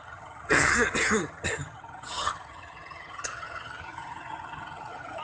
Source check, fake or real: fake